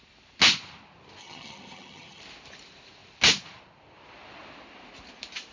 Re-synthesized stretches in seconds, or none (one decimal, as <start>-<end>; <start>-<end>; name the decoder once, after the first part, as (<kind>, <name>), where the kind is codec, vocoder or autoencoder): 1.2-2.2 (vocoder, HiFi-GAN)